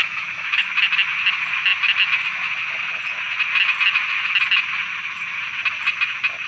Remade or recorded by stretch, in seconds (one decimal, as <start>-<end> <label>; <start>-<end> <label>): 0.0-0.7 remade; 0.7-6.5 recorded

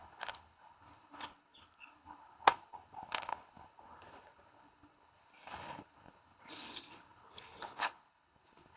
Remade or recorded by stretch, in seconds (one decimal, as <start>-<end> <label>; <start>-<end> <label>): 0.0-8.8 remade

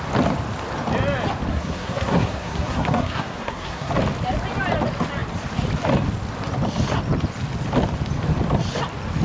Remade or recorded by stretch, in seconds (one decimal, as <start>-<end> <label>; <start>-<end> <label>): 0.0-1.5 recorded; 1.5-3.9 remade; 3.9-9.2 recorded